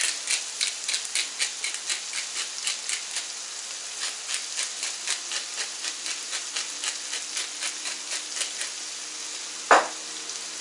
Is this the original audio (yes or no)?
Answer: yes